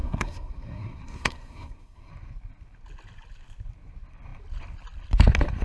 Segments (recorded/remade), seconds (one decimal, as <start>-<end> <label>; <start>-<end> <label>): 0.0-2.1 remade; 2.1-5.6 recorded